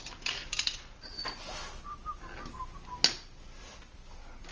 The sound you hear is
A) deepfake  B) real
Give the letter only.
B